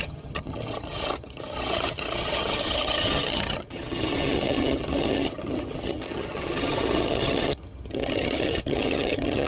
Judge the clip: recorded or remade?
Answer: remade